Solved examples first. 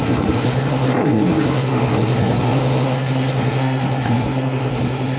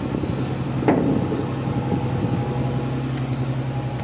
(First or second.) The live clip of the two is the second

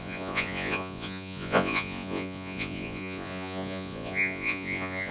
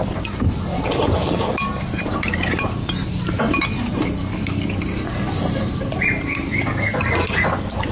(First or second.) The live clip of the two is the second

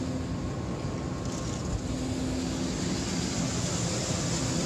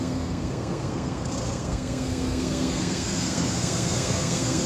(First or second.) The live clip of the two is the first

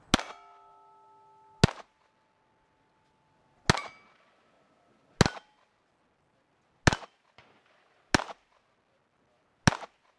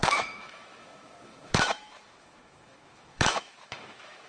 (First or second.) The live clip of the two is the first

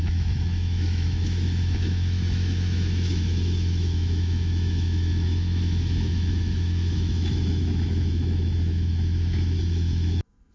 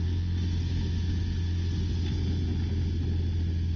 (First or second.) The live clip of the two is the second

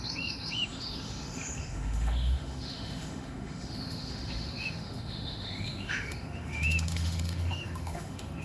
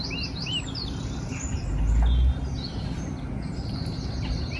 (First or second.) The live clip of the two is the second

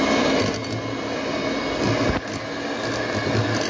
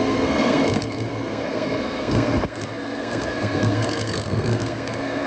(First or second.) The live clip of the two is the first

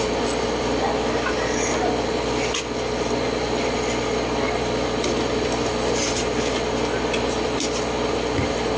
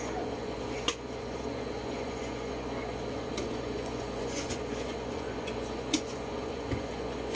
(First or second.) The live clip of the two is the first